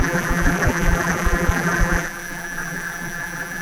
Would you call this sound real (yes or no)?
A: no